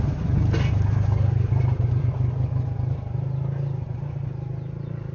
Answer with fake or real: real